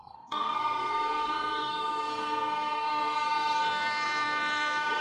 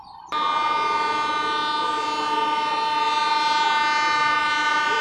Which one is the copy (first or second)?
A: first